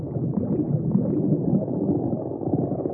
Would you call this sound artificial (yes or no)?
no